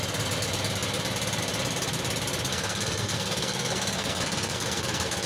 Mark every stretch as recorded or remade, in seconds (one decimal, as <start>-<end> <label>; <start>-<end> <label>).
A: 0.0-2.5 recorded; 2.5-5.3 remade